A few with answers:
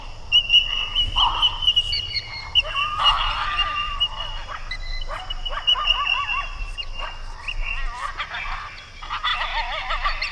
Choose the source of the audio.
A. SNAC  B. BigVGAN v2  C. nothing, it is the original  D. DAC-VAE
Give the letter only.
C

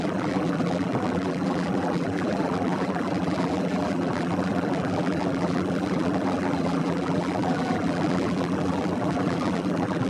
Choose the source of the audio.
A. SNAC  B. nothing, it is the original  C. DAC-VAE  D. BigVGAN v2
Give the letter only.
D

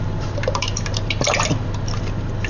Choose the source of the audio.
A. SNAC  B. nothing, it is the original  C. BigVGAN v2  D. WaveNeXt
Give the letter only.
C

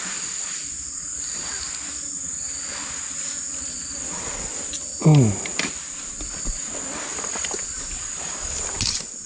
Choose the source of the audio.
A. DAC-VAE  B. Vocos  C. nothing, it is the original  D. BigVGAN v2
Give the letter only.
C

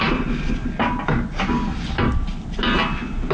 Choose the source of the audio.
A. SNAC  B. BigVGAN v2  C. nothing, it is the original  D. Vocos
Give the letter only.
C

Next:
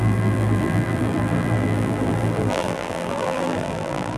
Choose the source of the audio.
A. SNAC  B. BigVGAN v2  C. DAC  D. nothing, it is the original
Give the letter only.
B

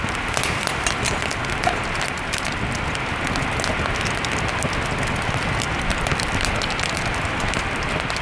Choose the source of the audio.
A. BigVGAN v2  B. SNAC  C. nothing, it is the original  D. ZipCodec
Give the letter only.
C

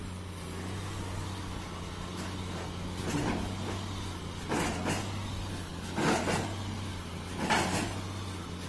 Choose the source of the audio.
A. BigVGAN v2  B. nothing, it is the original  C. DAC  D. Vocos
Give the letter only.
B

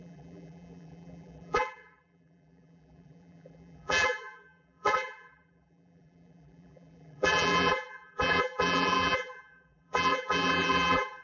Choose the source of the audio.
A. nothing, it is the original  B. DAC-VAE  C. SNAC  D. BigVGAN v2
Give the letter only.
D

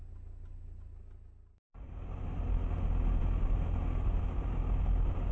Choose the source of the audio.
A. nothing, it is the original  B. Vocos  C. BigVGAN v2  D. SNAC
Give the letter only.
A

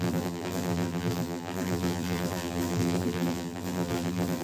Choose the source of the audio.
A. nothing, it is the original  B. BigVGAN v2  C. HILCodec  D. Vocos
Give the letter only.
B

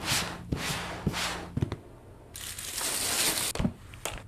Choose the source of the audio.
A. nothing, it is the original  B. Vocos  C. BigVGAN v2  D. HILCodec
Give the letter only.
A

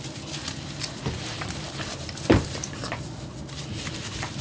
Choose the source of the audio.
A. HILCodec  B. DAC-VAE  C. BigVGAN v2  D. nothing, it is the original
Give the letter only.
C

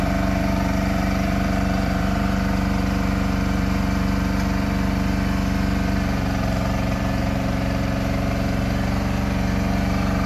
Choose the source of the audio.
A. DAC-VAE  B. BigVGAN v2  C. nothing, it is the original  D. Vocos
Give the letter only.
B